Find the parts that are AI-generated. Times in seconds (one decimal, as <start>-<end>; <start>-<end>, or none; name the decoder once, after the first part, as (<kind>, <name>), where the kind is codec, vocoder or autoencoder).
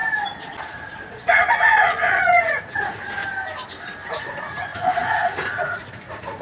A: 0.6-3.2 (vocoder, Vocos); 4.1-6.4